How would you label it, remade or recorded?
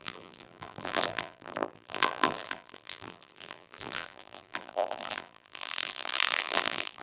remade